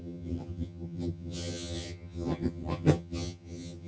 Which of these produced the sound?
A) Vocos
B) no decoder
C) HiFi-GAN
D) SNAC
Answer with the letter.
C